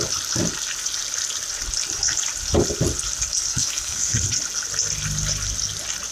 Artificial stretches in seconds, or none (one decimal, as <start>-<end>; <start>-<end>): 3.5-4.2